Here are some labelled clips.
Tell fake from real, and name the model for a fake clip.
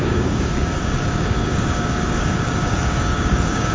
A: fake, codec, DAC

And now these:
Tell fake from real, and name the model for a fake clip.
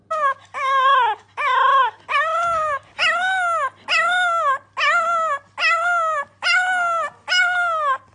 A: real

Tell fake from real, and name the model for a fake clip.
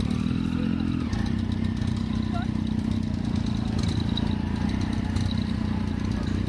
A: real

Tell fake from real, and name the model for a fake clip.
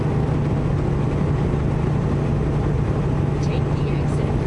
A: real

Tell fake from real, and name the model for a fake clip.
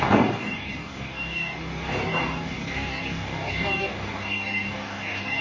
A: fake, codec, DAC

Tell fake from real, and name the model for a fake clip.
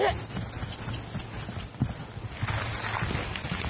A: real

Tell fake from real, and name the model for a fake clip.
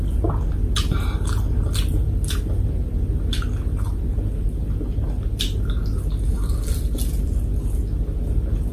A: real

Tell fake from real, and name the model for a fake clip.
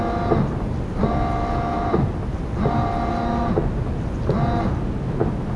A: real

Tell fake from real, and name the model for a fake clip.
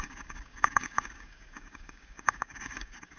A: fake, codec, DAC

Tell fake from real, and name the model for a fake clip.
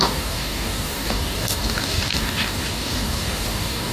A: fake, codec, DAC